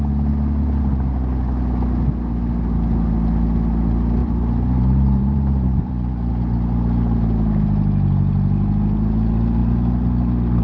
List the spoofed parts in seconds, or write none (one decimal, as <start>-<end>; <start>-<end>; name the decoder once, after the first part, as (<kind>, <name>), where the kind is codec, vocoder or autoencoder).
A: 4.2-6.3 (vocoder, BigVGAN v2)